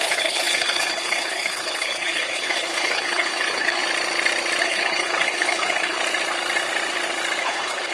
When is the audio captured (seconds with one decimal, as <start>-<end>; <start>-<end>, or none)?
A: 3.8-4.6; 6.0-7.4